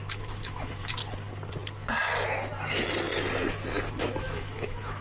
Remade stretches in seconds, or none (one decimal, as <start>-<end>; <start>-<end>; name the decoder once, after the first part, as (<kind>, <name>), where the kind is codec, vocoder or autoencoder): 0.0-1.0 (autoencoder, DAC-VAE); 4.0-5.0